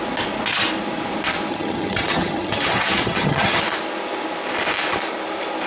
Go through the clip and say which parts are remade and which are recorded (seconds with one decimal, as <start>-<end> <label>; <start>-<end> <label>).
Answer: 0.0-1.5 recorded; 1.5-3.6 remade; 3.6-5.7 recorded